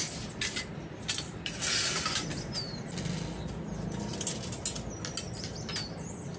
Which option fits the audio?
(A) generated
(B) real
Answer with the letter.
B